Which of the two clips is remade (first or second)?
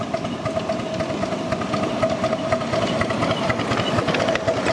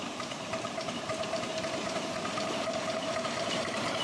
second